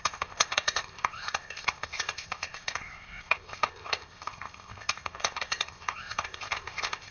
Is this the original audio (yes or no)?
no